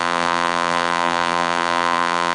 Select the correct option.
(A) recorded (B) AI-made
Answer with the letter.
B